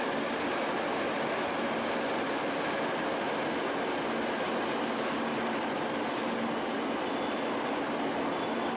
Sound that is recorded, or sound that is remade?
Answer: recorded